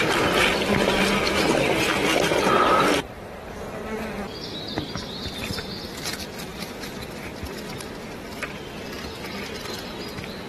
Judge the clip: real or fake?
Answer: real